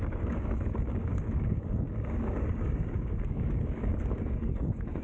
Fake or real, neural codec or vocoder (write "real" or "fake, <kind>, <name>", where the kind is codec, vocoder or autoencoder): fake, codec, DAC